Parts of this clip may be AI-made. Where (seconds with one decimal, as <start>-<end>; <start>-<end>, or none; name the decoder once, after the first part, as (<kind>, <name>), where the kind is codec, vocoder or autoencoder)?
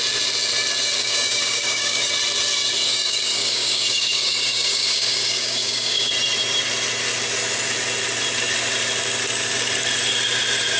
1.0-2.1 (codec, DAC); 2.9-6.1